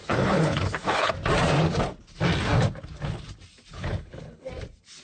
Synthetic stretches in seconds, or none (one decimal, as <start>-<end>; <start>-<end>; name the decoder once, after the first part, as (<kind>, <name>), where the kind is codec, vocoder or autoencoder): 0.0-1.1 (codec, HILCodec); 3.7-4.5